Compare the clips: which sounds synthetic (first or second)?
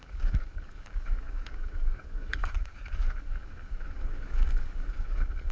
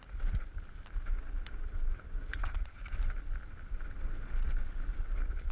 first